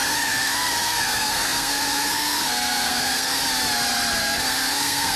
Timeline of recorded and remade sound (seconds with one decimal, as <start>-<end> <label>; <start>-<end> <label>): 0.0-3.4 remade; 3.4-4.2 recorded; 4.2-5.2 remade